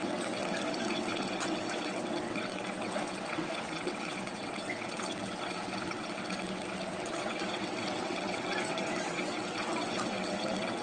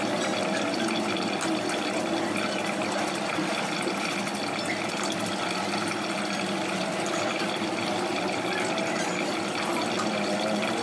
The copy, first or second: first